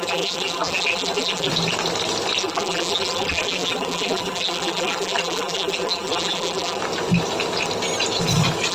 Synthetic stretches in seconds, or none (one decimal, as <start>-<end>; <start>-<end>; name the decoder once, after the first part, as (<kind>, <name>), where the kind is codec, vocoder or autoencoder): 0.0-1.5 (vocoder, BigVGAN v2); 2.4-6.8